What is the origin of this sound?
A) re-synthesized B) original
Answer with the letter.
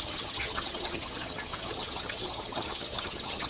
A